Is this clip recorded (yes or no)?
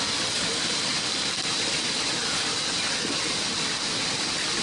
yes